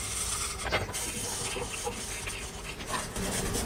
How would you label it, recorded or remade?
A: recorded